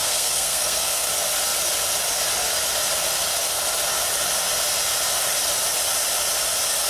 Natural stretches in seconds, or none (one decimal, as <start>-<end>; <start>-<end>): 1.1-6.9